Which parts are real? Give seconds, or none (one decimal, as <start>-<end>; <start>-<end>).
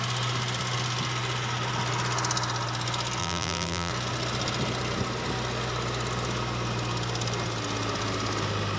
0.0-3.2; 3.9-8.8